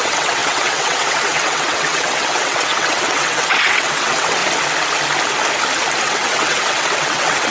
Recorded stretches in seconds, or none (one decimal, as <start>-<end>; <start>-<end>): 4.4-6.0

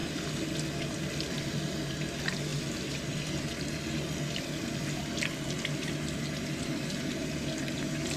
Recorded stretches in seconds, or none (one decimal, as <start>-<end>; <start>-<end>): 0.0-8.2

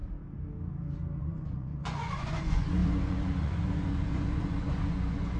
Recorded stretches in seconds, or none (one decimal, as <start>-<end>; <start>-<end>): 0.0-1.2

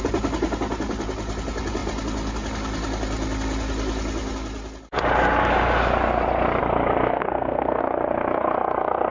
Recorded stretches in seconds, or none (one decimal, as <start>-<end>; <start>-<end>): 0.0-7.2; 7.8-9.1

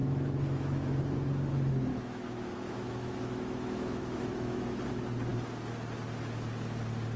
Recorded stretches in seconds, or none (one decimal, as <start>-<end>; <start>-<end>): 1.0-1.9; 4.8-7.2